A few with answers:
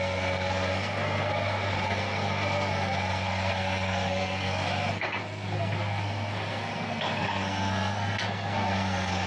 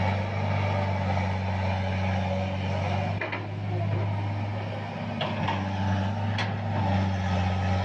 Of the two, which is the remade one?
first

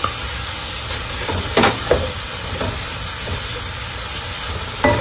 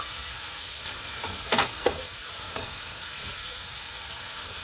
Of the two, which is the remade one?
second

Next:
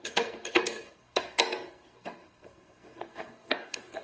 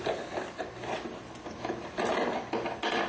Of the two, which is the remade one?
first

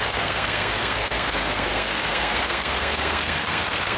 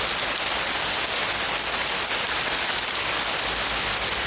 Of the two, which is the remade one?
first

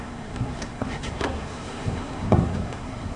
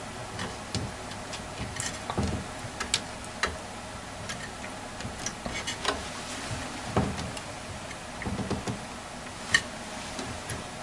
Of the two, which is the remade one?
first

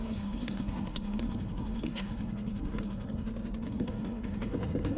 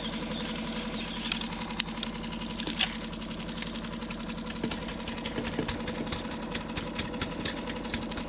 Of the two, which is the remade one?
first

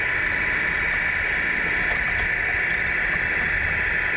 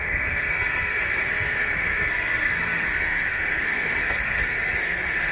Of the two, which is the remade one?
second